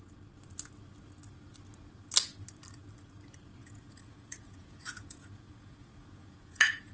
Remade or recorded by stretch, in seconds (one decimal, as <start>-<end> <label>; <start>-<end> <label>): 0.0-3.6 recorded; 3.6-6.9 remade